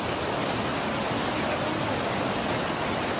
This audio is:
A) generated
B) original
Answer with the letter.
B